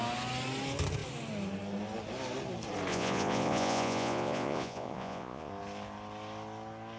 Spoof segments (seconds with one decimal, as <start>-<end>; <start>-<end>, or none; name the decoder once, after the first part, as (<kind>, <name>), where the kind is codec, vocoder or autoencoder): 2.9-5.5 (vocoder, Vocos)

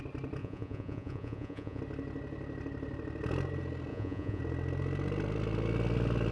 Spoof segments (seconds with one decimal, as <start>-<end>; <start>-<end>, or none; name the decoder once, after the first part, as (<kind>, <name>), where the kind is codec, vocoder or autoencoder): 0.4-1.8 (vocoder, Vocos); 3.9-4.4

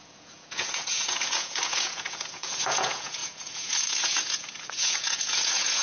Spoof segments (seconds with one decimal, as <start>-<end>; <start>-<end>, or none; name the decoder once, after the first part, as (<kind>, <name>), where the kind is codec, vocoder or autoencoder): 0.0-5.8 (vocoder, Vocos)

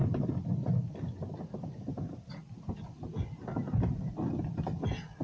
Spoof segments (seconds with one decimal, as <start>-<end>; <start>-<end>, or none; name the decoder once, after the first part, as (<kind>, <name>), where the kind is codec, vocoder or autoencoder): none

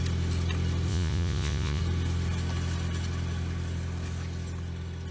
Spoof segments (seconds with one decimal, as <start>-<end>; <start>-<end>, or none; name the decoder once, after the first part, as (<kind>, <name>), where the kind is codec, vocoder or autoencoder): 0.9-1.8 (vocoder, Vocos)

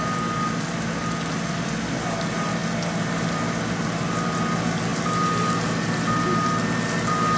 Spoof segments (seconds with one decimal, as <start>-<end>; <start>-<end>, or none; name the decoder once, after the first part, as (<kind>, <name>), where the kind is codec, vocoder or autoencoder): none

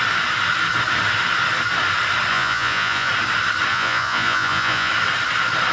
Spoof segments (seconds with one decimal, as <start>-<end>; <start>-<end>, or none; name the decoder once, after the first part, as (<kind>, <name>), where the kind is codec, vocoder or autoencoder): 2.3-3.1 (vocoder, Vocos); 3.7-4.9

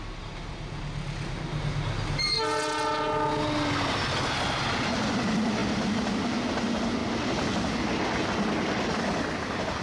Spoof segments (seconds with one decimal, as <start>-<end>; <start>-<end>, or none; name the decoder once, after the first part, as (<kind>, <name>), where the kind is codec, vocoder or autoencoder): none